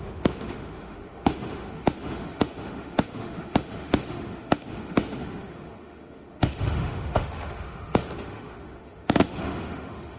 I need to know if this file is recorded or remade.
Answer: remade